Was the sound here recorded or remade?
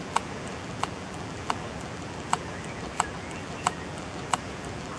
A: remade